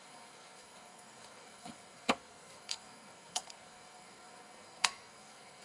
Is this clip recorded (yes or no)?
no